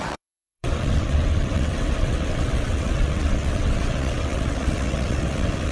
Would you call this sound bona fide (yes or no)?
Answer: no